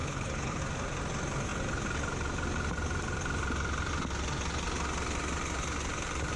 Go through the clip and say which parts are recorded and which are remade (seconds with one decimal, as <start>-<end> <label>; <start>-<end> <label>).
0.0-0.6 remade; 0.6-6.4 recorded